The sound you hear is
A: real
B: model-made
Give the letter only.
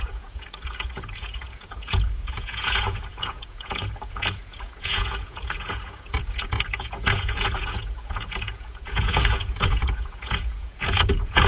B